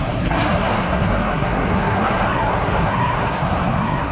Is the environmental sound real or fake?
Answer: fake